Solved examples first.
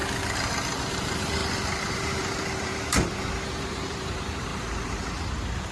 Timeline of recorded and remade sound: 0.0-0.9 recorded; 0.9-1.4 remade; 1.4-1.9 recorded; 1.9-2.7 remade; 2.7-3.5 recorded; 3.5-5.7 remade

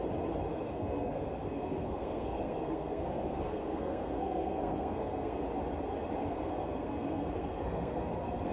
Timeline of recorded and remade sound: 0.0-0.5 recorded; 0.5-5.4 remade; 5.4-6.2 recorded; 6.2-8.5 remade

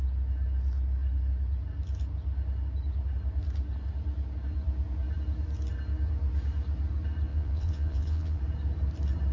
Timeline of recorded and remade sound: 0.0-7.3 recorded; 7.3-8.4 remade; 8.4-9.3 recorded